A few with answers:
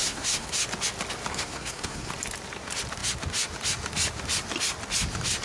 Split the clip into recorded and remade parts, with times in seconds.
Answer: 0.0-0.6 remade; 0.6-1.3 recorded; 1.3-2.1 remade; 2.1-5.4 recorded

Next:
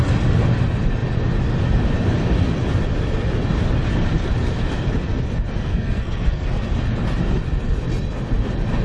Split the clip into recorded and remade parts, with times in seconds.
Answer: 0.0-5.7 recorded; 5.7-6.7 remade; 6.7-8.8 recorded